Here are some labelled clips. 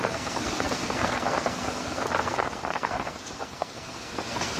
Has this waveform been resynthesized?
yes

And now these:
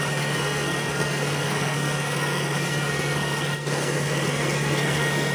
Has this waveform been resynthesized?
yes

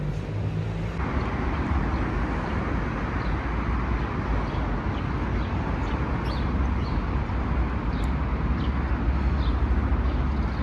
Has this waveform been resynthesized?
no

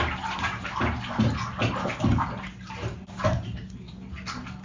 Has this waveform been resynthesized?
no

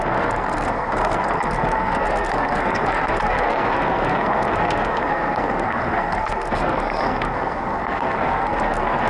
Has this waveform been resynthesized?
yes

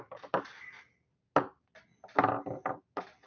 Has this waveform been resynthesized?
no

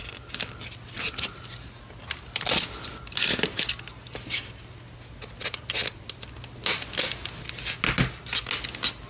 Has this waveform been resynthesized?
no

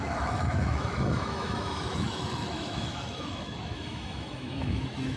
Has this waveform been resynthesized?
yes